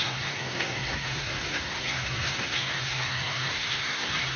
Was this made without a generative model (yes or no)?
no